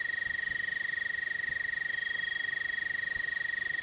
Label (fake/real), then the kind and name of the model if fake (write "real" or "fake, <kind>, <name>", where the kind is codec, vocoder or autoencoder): real